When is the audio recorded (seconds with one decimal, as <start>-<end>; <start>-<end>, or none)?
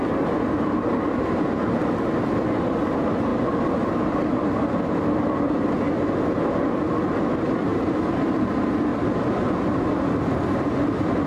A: 0.0-8.9